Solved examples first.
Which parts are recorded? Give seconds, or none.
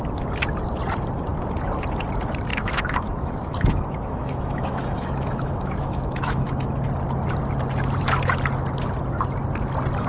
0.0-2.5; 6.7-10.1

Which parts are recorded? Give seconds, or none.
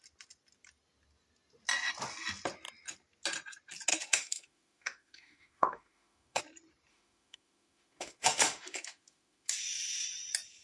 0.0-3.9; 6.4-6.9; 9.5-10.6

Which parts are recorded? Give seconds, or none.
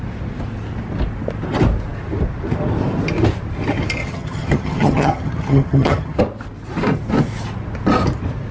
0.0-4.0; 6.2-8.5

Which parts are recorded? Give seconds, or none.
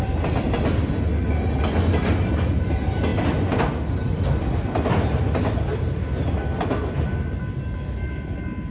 0.0-8.7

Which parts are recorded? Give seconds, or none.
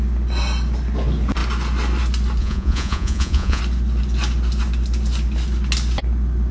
0.0-2.4; 3.6-6.5